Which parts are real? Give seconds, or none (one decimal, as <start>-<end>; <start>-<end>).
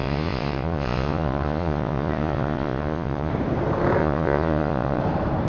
3.3-4.0; 5.0-5.5